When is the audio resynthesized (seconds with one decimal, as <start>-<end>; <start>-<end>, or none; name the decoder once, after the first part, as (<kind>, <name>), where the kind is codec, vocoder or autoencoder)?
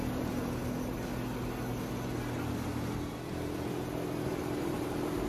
0.0-1.1 (vocoder, BigVGAN v2); 4.3-5.3